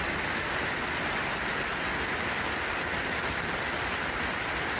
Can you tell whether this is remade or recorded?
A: recorded